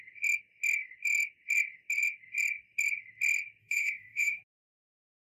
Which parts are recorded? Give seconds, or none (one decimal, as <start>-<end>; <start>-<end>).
0.0-3.6; 4.4-5.2